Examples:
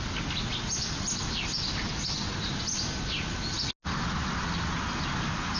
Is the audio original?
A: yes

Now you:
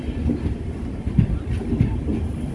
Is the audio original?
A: no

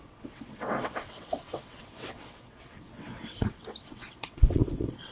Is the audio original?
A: no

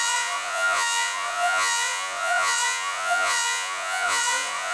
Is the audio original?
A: no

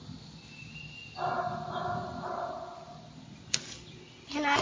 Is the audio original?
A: yes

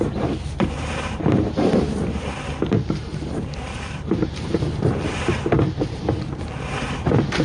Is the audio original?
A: no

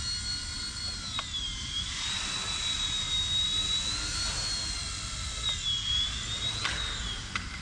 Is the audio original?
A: yes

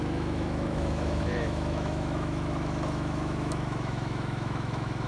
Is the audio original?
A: no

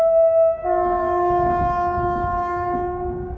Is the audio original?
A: no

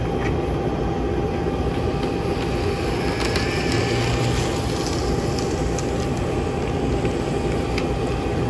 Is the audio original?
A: yes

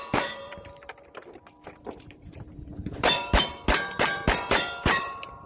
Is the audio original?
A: no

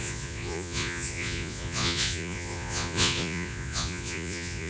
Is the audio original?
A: no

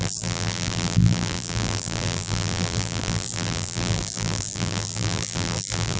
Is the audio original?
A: no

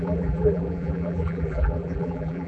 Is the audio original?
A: no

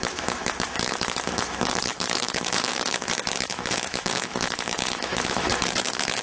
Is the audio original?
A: no